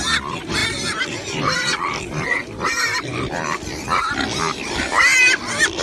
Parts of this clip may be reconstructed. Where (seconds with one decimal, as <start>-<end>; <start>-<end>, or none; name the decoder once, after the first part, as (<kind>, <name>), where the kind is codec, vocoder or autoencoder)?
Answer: 0.6-4.1 (vocoder, BigVGAN v2); 5.1-5.8

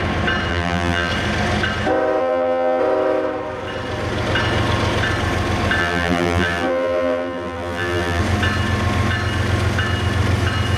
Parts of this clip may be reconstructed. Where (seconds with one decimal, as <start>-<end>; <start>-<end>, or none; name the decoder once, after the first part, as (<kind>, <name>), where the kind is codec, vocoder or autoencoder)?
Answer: 0.5-1.1 (vocoder, BigVGAN v2); 2.2-2.8; 5.8-8.2

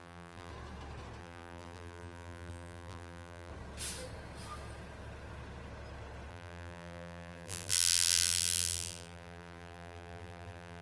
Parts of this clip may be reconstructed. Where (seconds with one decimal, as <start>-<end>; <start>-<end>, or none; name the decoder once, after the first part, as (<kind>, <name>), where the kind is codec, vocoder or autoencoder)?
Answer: 0.0-0.5 (vocoder, BigVGAN v2); 1.2-3.5; 6.3-10.8

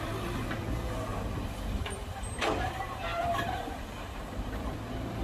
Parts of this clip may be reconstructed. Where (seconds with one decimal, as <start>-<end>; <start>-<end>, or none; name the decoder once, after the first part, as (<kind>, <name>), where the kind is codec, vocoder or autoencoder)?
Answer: 1.1-4.2 (vocoder, BigVGAN v2)

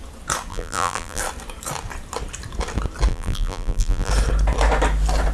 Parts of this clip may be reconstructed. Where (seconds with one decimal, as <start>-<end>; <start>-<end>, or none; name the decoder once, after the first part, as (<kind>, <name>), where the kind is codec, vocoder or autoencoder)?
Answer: 0.5-1.2 (vocoder, BigVGAN v2); 3.1-4.1

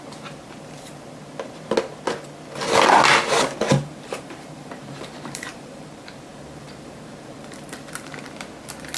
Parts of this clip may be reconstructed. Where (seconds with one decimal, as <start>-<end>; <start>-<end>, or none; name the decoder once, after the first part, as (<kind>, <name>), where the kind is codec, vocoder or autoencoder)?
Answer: 3.7-8.1 (vocoder, BigVGAN v2)